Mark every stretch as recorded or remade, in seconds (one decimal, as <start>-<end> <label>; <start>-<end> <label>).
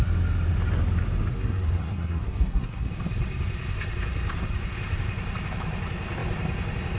0.0-1.3 recorded; 1.3-2.9 remade; 2.9-7.0 recorded